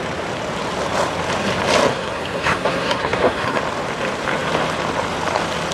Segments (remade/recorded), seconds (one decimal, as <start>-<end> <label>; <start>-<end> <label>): 0.0-1.9 recorded; 1.9-3.6 remade; 3.6-5.7 recorded